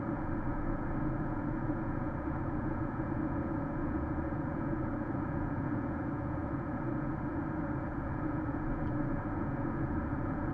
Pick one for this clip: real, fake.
fake